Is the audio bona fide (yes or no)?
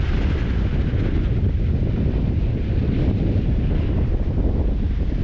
yes